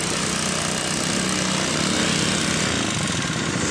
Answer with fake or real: real